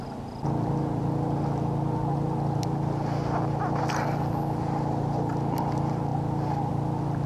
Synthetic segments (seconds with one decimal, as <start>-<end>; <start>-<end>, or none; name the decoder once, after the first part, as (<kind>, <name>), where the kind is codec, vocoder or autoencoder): none